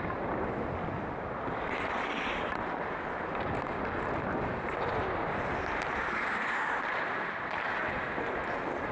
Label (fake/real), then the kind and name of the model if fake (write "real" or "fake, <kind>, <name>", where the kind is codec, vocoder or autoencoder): real